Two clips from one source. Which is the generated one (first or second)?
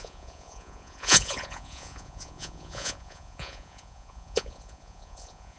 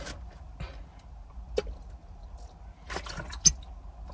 first